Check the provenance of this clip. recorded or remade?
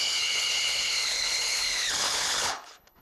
remade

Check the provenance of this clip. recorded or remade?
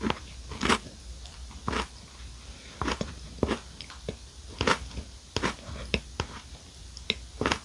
recorded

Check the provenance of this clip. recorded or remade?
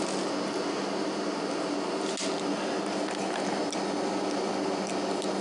recorded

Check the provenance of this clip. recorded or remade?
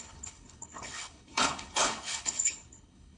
remade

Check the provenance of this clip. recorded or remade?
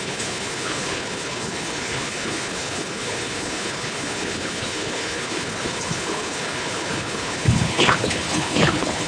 remade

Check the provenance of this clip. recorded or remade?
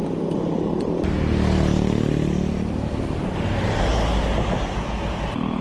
recorded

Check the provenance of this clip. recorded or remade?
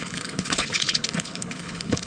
remade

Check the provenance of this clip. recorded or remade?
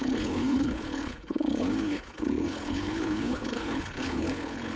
remade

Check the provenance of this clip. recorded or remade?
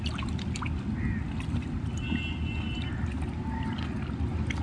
recorded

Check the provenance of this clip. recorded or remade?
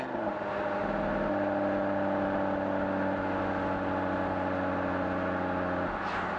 recorded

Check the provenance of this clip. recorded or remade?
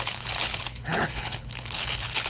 remade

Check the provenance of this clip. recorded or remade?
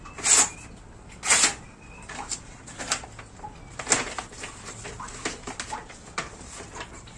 recorded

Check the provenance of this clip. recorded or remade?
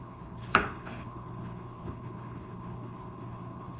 remade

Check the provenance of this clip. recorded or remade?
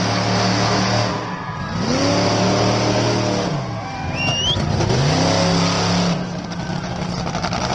recorded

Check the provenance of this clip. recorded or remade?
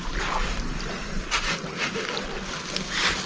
recorded